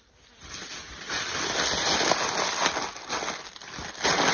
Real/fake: real